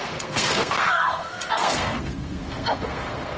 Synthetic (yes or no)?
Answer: yes